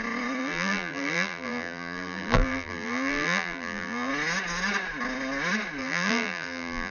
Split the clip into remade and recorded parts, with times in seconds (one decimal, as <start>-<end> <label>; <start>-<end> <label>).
0.0-0.4 recorded; 0.4-4.1 remade; 4.1-5.8 recorded; 5.8-6.9 remade